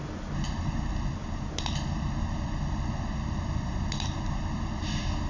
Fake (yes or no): no